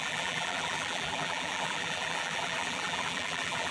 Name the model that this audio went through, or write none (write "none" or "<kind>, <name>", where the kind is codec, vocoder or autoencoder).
vocoder, BigVGAN v2